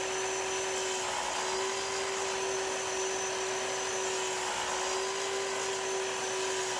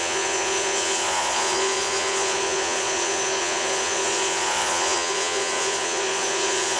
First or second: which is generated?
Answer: second